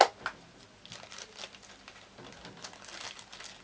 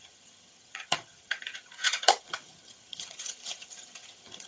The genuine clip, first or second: first